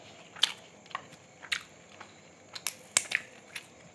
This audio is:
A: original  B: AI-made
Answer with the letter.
A